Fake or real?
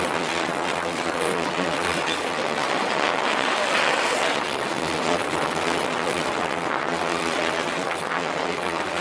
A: fake